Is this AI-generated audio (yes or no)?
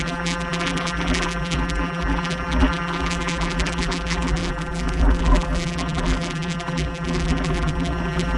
yes